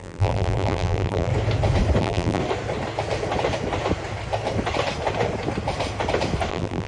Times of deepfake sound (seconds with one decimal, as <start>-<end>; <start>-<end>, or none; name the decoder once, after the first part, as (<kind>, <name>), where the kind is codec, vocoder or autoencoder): 0.0-1.3 (vocoder, BigVGAN v2); 2.0-2.4; 6.5-6.9

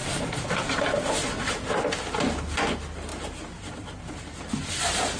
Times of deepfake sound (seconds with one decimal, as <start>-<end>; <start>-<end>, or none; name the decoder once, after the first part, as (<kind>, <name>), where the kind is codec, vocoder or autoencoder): 0.0-0.8 (vocoder, BigVGAN v2); 3.1-4.3

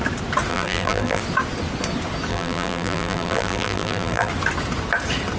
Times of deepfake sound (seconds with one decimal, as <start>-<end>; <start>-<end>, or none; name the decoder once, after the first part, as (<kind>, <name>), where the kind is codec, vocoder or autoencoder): 0.5-1.2 (vocoder, BigVGAN v2); 2.3-4.3

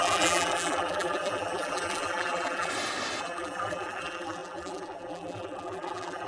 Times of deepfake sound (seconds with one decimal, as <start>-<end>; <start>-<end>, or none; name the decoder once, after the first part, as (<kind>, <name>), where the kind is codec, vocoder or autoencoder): 0.0-2.7 (vocoder, BigVGAN v2); 3.2-6.3

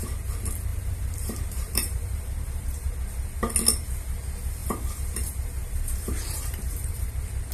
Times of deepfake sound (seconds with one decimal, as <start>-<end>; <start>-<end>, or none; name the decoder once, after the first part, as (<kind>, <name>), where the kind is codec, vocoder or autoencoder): 0.7-2.9 (vocoder, BigVGAN v2); 4.6-7.1